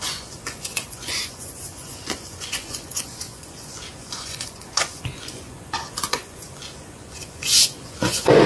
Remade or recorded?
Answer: remade